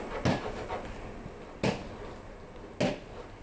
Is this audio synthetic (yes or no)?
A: no